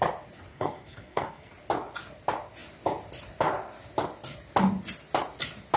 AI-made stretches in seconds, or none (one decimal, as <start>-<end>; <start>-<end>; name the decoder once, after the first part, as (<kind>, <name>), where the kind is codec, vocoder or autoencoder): 0.5-1.5 (codec, SNAC)